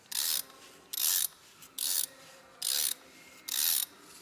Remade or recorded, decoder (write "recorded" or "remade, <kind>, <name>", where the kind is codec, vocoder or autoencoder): recorded